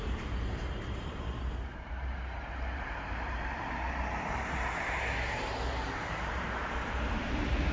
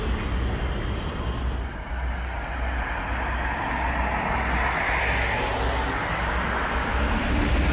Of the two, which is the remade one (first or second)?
first